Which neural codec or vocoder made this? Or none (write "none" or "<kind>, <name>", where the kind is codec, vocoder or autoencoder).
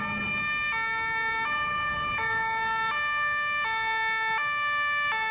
none